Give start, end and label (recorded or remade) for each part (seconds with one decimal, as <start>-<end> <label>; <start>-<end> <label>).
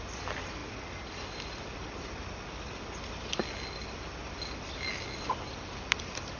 0.0-6.4 recorded